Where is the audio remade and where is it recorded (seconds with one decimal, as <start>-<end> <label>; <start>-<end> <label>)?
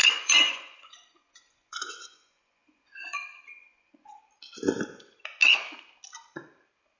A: 0.0-4.2 remade; 4.2-7.0 recorded